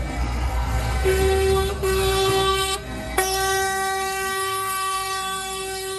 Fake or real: fake